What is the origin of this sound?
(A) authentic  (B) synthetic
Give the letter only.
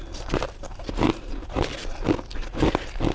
A